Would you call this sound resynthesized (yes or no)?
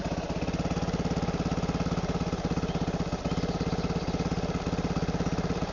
no